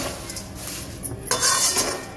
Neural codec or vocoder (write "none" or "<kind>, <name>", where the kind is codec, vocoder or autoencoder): none